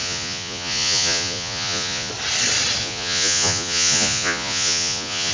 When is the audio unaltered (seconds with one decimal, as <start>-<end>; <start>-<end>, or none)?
2.1-2.8